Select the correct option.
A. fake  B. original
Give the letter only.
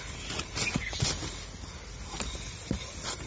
B